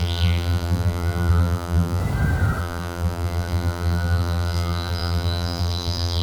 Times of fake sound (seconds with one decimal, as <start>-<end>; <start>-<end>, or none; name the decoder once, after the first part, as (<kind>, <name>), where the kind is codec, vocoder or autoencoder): 0.0-2.0 (vocoder, BigVGAN v2); 2.6-6.2